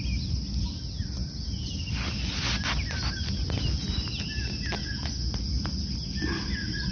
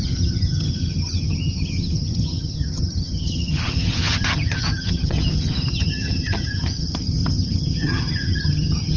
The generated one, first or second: second